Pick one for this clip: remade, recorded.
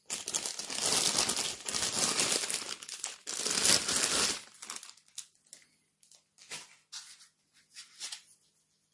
recorded